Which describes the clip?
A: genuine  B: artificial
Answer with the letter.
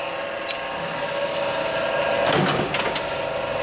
A